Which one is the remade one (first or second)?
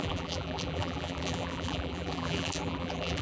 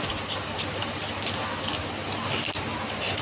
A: first